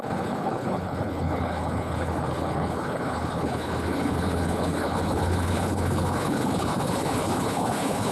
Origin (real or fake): fake